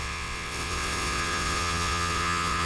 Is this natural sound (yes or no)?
no